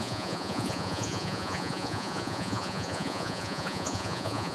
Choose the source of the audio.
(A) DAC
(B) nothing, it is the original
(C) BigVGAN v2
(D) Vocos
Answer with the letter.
D